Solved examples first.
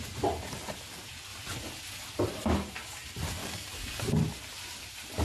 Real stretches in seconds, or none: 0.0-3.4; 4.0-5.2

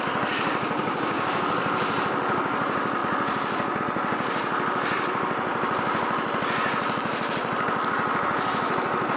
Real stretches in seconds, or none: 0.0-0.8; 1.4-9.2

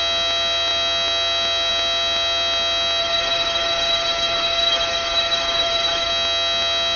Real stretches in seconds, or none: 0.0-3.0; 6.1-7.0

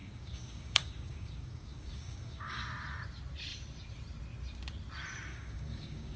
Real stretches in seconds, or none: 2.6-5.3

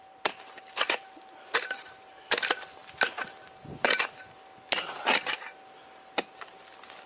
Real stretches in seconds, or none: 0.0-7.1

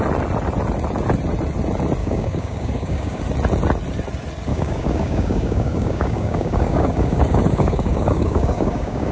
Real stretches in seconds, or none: 0.0-2.0; 3.2-4.5